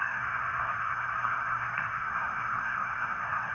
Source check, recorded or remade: remade